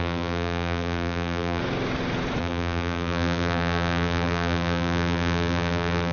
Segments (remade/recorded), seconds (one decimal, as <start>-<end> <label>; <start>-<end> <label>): 0.0-1.6 remade; 1.6-2.4 recorded; 2.4-6.1 remade